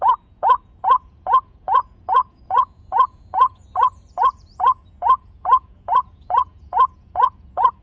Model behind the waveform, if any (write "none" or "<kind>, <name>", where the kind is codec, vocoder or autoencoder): vocoder, Vocos